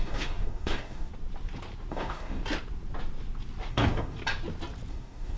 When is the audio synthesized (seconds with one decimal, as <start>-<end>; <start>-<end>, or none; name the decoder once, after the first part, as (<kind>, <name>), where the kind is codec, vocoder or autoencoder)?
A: 0.0-1.1 (codec, DAC); 1.9-2.4; 3.7-4.2; 4.9-5.4